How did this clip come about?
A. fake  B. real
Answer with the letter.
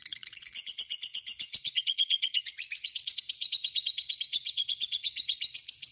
A